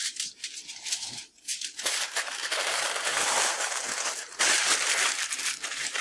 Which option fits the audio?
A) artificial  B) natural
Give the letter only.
A